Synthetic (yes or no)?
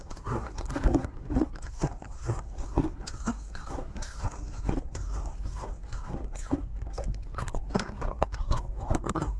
yes